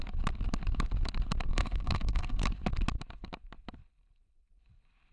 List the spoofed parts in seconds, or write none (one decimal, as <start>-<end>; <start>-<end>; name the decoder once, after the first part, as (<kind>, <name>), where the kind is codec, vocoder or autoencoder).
1.5-2.4 (codec, SNAC)